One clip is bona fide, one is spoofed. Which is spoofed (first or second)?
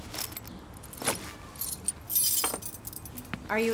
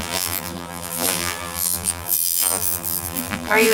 second